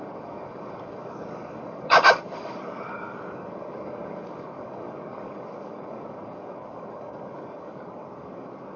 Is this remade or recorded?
remade